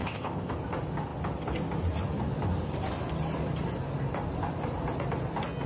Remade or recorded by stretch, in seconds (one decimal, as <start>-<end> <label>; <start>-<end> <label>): 0.0-0.5 remade; 0.5-5.7 recorded